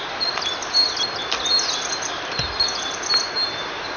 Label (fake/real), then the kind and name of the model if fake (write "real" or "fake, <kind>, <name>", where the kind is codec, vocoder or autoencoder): real